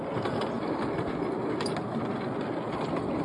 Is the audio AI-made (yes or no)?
no